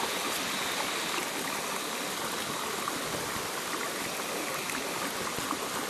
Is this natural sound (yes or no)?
yes